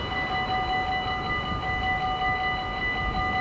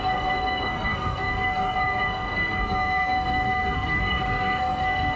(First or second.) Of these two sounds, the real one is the first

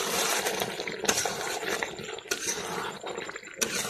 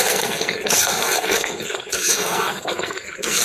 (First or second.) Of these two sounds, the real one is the first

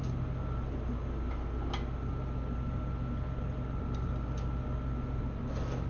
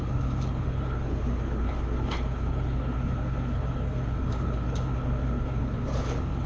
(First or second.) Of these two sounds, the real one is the first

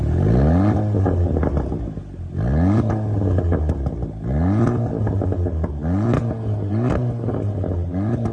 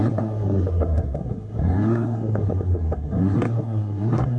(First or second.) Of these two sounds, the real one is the first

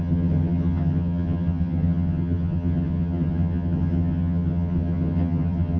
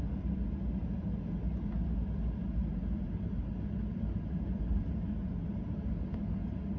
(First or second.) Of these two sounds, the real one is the second